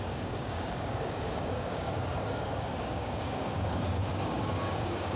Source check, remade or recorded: remade